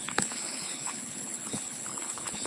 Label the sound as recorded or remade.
remade